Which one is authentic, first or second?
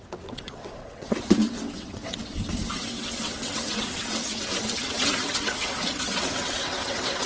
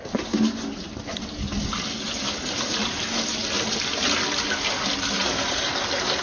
second